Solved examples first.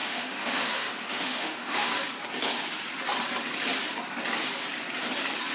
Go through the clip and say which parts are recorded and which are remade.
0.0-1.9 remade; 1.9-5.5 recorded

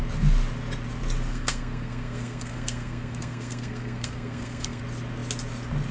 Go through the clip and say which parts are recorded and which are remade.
0.0-1.3 recorded; 1.3-4.8 remade; 4.8-5.9 recorded

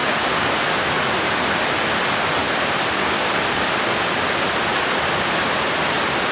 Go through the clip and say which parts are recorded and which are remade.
0.0-1.7 remade; 1.7-6.3 recorded